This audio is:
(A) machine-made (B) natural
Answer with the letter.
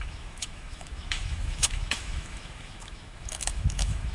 A